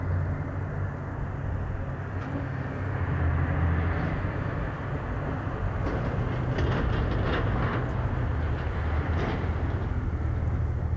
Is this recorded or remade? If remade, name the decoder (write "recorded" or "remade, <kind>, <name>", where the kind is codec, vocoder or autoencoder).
recorded